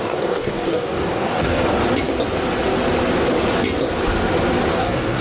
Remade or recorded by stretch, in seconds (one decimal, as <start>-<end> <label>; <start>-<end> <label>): 0.0-1.6 remade; 1.6-4.7 recorded; 4.7-5.2 remade